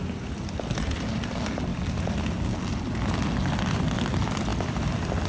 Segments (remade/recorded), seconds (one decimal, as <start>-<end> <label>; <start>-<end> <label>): 0.0-1.7 remade; 1.7-3.7 recorded; 3.7-5.3 remade